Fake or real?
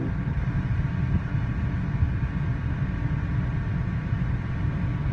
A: real